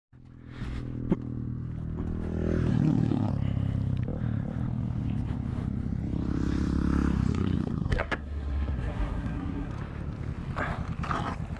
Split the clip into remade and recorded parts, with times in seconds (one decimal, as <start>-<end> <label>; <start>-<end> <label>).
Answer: 0.0-2.7 recorded; 2.7-3.3 remade; 3.3-7.3 recorded; 7.3-9.7 remade; 9.7-11.6 recorded